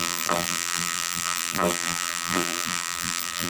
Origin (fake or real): fake